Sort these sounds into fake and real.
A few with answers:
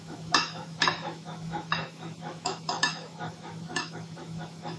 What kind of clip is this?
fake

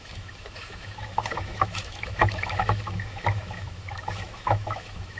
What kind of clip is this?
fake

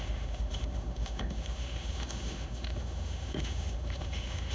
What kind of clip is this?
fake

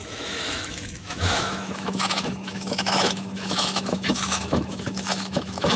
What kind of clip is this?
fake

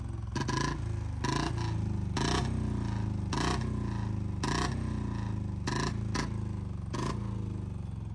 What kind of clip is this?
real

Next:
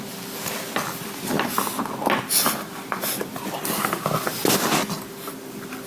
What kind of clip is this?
real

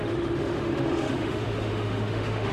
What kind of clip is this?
fake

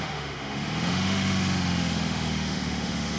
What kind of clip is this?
fake